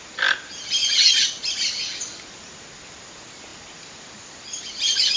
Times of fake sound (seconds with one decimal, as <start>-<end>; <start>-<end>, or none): 0.8-1.4